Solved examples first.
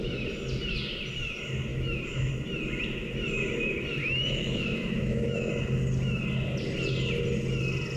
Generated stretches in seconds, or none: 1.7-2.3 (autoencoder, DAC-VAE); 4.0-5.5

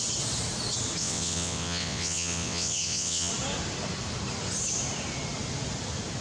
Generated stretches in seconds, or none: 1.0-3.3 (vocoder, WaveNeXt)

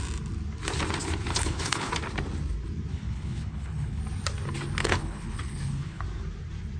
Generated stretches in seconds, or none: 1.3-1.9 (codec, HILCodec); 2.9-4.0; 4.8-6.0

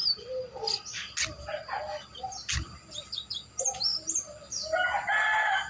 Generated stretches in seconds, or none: none

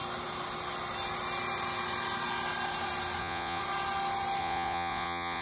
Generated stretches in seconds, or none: 3.2-3.6 (vocoder, Vocos); 4.4-5.4